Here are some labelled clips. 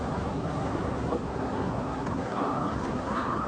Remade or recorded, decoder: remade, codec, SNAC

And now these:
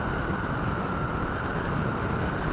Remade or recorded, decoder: recorded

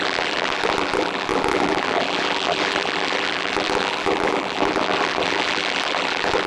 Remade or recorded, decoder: remade, vocoder, BigVGAN v2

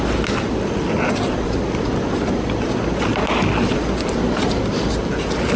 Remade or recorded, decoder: recorded